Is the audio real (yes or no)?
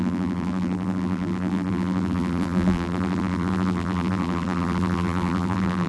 no